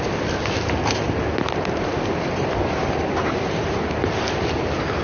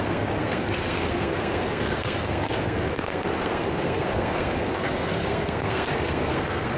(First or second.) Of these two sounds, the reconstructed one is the second